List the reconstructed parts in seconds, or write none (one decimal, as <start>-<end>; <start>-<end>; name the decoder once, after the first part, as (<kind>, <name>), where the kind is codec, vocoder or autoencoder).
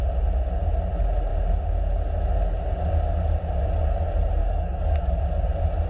4.4-5.2 (codec, DAC)